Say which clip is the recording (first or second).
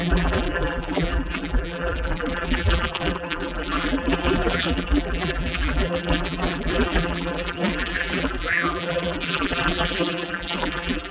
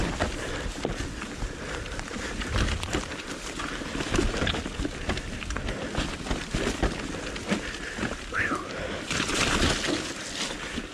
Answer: second